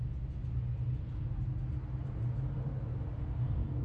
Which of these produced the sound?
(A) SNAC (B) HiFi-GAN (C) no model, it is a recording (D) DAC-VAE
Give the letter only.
C